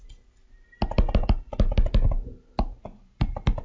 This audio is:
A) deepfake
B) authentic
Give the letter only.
B